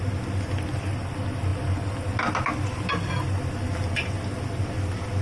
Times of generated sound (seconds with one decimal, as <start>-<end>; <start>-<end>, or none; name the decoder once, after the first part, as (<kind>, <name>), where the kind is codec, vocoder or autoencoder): none